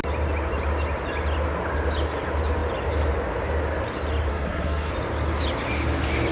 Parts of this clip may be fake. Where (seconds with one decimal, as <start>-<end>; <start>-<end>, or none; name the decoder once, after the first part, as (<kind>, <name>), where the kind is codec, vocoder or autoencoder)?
4.3-4.9 (codec, SNAC)